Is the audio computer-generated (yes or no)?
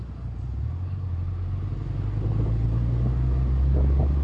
no